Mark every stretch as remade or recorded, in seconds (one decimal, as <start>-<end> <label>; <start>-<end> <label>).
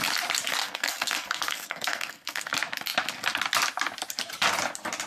0.0-0.6 recorded; 0.6-2.5 remade; 2.5-5.1 recorded